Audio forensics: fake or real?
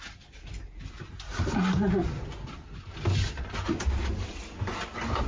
real